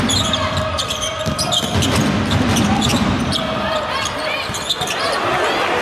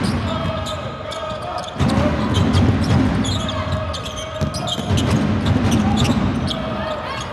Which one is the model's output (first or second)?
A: first